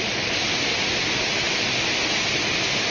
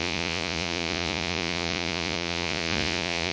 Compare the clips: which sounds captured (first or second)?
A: first